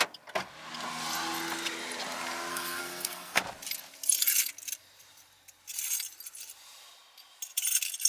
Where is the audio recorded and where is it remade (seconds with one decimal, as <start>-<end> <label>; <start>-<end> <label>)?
0.0-2.5 recorded; 2.5-3.4 remade; 3.4-8.1 recorded